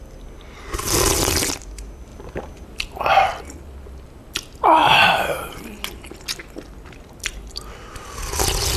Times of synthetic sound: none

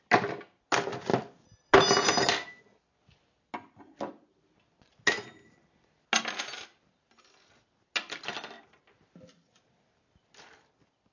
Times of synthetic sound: none

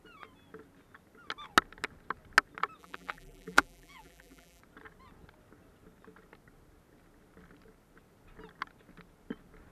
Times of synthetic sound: 2.8-4.6 (vocoder, BigVGAN v2)

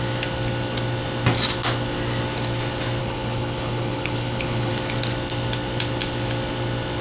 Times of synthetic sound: 3.0-4.7 (codec, HILCodec)

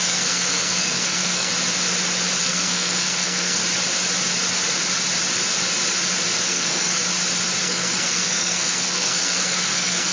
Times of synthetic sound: 0.0-1.5 (codec, SNAC); 2.4-3.6; 6.4-7.0; 7.6-10.1

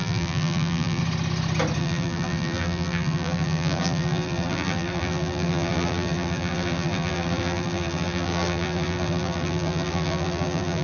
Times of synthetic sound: 0.0-1.0 (vocoder, BigVGAN v2); 1.8-10.8

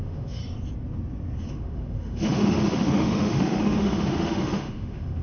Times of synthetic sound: 0.0-0.4 (autoencoder, DAC-VAE); 1.5-5.2

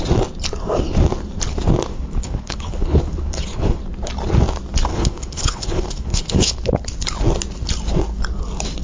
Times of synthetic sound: 1.9-3.8 (codec, HILCodec); 4.9-6.5